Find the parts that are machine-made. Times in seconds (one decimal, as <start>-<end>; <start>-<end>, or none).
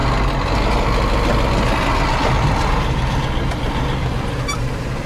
2.6-3.2